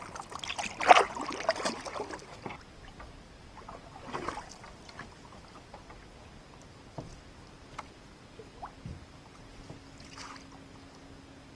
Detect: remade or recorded recorded